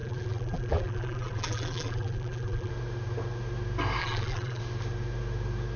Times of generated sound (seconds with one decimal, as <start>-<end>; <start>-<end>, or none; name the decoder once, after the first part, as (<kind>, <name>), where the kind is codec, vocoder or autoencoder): 0.0-2.7 (vocoder, BigVGAN v2); 4.0-4.6